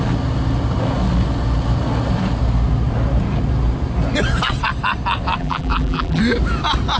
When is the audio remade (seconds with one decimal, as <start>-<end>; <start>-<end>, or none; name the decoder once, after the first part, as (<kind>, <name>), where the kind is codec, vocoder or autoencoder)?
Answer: 5.4-6.2 (vocoder, BigVGAN v2)